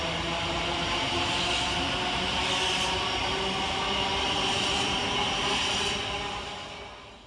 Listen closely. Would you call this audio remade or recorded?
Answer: recorded